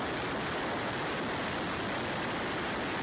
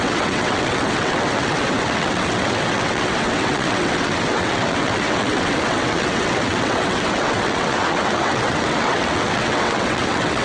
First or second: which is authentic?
first